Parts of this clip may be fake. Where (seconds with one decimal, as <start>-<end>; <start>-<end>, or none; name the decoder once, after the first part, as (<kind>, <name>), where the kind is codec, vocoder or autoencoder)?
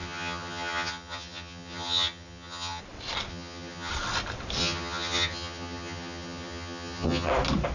0.0-2.8 (vocoder, HiFi-GAN); 3.3-3.9; 4.6-7.3